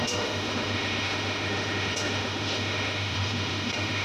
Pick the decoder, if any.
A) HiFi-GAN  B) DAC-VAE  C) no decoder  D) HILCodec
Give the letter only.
B